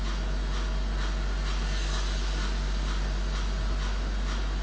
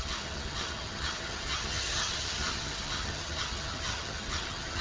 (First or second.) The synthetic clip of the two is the second